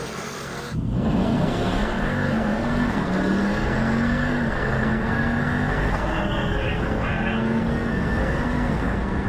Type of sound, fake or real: fake